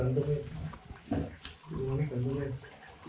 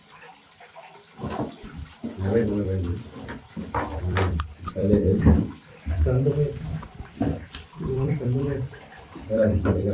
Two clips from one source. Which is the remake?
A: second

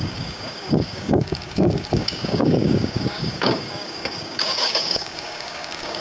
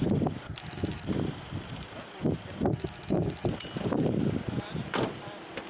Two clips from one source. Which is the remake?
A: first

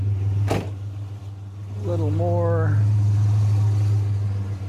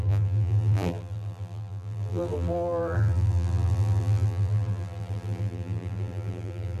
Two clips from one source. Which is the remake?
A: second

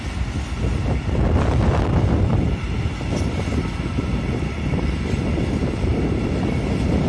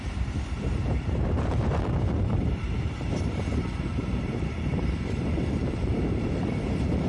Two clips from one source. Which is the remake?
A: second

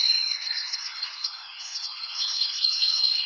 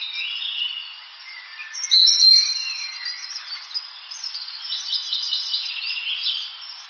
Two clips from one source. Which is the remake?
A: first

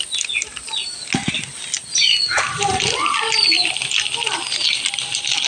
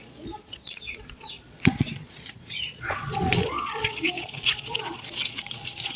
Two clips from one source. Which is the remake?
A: second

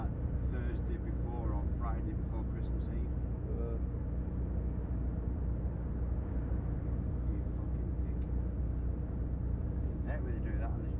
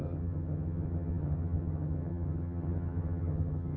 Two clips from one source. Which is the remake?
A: second